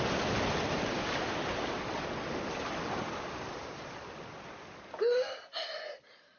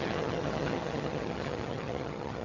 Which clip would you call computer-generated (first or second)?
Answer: second